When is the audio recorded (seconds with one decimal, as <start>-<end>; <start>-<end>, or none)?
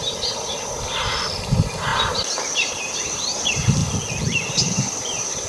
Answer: 3.8-4.5